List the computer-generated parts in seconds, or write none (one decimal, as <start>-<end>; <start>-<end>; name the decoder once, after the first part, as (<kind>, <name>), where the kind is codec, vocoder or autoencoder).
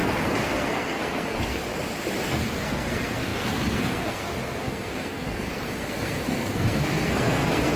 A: 0.0-1.7 (codec, SNAC); 2.3-7.8